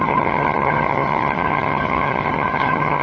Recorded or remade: remade